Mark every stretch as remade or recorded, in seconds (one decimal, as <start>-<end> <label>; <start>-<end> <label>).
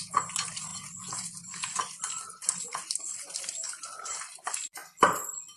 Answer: 0.0-5.6 remade